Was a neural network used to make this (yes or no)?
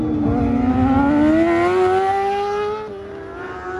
no